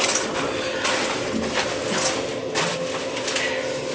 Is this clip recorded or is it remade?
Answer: recorded